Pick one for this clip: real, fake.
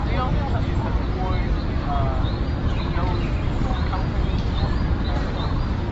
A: real